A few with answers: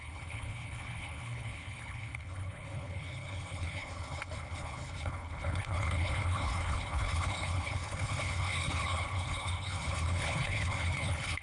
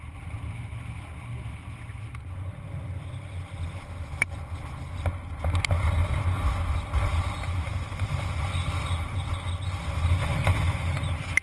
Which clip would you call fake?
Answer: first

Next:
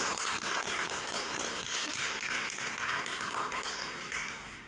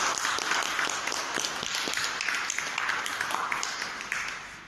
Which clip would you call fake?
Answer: first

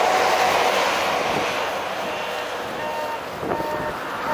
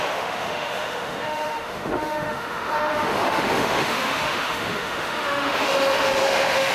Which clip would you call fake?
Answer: second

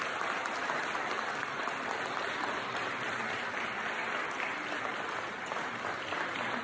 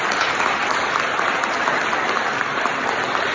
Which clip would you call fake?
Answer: first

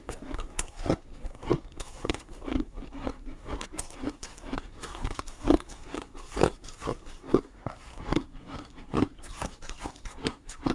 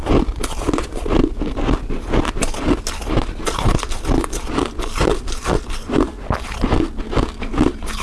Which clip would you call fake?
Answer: first